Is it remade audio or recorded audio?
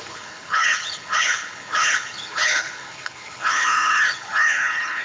remade